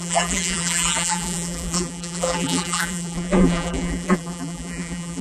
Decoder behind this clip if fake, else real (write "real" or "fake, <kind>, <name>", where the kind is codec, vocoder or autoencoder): fake, vocoder, BigVGAN v2